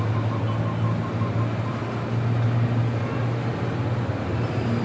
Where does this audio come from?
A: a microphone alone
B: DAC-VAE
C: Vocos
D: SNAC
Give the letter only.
A